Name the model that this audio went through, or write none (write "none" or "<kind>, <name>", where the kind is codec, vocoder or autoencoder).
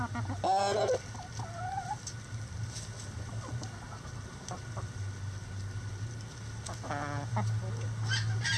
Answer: none